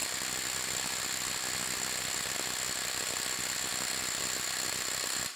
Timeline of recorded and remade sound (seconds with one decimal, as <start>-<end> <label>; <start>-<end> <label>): 0.0-5.4 recorded